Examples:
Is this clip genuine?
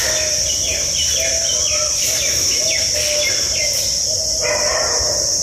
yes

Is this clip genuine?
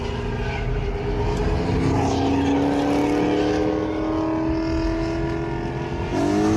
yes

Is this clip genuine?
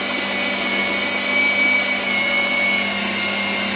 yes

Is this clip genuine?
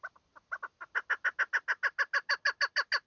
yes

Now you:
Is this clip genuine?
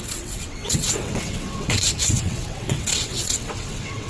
no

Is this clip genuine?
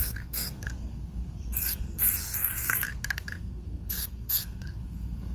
no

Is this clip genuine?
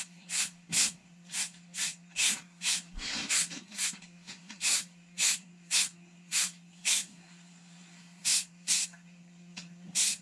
no